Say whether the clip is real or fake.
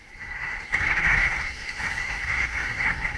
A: fake